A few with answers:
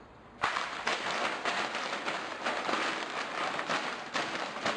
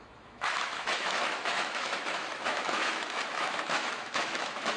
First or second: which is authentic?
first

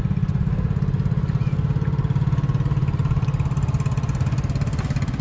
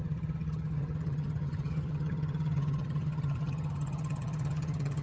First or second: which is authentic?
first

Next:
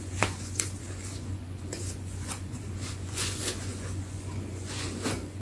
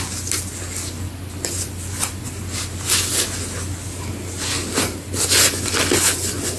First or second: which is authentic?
second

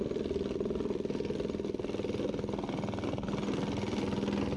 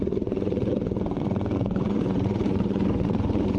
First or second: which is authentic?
first